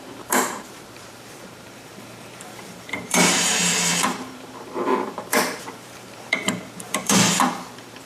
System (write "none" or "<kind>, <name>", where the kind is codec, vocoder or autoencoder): vocoder, BigVGAN v2